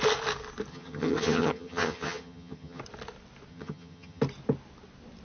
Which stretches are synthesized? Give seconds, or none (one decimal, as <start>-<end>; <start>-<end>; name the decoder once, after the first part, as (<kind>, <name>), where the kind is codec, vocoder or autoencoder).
0.7-2.8 (vocoder, HiFi-GAN); 3.5-4.2